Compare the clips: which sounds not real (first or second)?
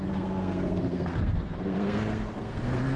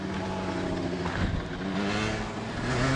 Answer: first